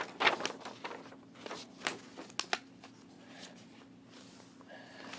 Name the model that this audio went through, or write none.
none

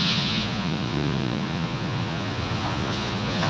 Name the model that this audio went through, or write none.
vocoder, Vocos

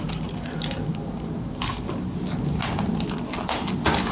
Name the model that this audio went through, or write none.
none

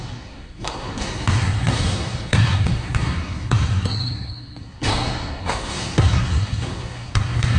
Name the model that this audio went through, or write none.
codec, SNAC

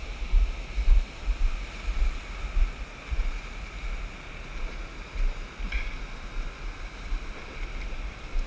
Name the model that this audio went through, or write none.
none